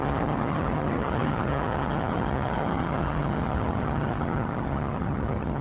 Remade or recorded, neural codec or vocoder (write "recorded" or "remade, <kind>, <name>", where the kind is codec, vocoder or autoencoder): remade, vocoder, HiFi-GAN